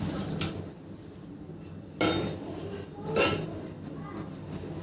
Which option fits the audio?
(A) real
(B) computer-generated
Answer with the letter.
A